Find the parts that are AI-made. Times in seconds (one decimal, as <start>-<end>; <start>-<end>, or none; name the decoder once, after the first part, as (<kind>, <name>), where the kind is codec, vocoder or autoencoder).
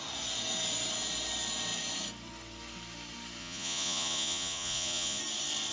3.4-5.2 (vocoder, Vocos)